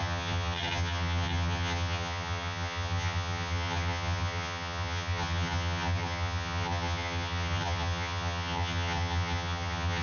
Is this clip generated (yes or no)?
yes